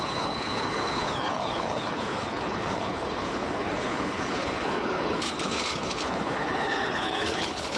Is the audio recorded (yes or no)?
no